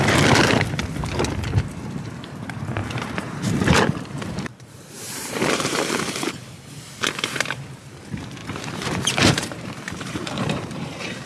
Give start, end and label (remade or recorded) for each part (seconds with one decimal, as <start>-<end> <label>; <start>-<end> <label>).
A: 0.0-2.8 recorded; 2.8-6.6 remade; 6.6-8.4 recorded; 8.4-11.3 remade